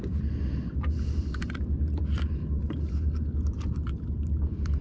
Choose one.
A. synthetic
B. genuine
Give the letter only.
A